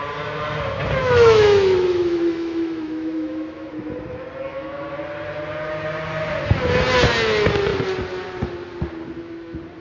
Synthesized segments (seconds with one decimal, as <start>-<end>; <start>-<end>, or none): 1.0-3.7; 4.5-5.0